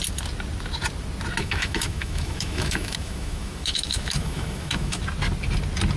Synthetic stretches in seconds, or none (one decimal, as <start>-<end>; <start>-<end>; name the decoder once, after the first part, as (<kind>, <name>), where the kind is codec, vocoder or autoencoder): 1.4-5.0 (autoencoder, DAC-VAE)